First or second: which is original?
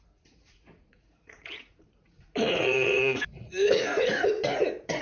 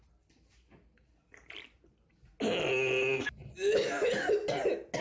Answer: second